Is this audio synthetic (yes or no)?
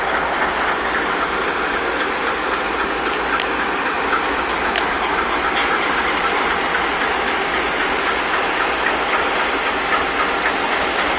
no